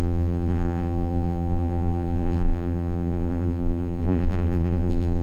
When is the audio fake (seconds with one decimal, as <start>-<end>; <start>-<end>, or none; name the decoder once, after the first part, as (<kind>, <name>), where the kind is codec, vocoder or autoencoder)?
0.0-5.2 (vocoder, BigVGAN v2)